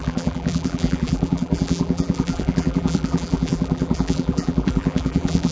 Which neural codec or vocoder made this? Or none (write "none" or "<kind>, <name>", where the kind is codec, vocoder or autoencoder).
vocoder, BigVGAN v2